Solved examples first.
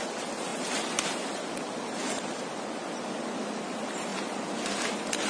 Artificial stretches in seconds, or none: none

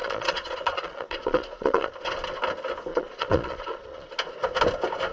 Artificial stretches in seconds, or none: 0.0-1.9 (vocoder, Vocos); 2.9-4.1

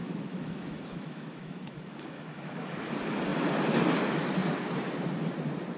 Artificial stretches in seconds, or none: 0.0-2.9 (autoencoder, DAC-VAE)

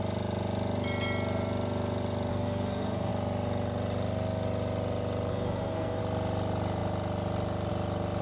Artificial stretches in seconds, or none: 2.3-3.1 (codec, SNAC); 5.3-6.0

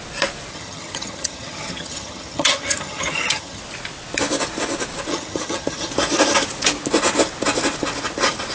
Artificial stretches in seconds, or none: 0.5-3.6 (vocoder, HiFi-GAN); 5.1-5.9

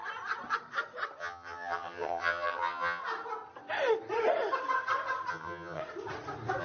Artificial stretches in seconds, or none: 1.2-3.0 (vocoder, HiFi-GAN); 5.3-5.8

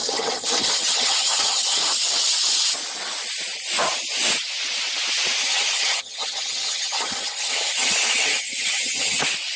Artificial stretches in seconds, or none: 0.0-1.8 (vocoder, HiFi-GAN); 5.4-9.2